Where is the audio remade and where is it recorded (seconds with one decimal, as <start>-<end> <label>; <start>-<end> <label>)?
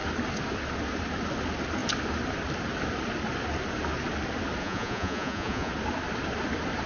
0.0-4.6 recorded; 4.6-5.7 remade; 5.7-6.9 recorded